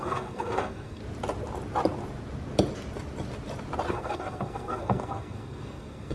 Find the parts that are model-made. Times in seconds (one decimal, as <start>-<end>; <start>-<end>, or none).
0.0-1.0; 3.9-6.1